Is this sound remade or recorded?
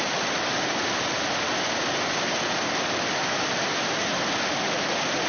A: recorded